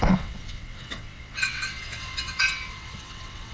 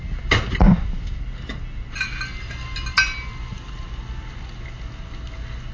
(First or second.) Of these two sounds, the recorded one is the second